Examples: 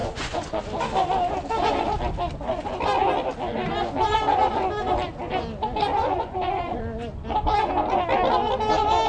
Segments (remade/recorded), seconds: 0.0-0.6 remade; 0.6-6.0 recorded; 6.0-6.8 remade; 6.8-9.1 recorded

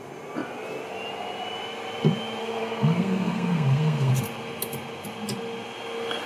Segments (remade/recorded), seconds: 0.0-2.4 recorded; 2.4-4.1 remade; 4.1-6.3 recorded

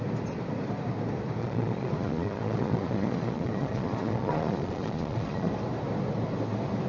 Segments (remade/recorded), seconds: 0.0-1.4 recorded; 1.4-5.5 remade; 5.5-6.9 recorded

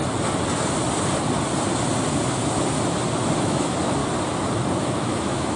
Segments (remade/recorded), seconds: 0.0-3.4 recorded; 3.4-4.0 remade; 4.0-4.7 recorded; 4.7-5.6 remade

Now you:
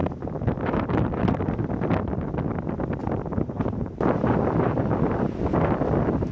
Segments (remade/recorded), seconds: 0.0-1.9 remade; 1.9-3.0 recorded; 3.0-5.2 remade; 5.2-6.3 recorded

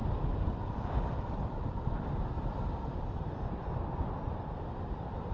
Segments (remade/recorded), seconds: 0.0-5.3 recorded

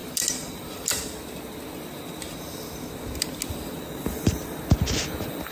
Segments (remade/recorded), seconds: 0.0-5.5 recorded

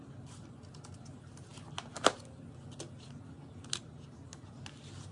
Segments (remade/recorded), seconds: 0.0-5.1 recorded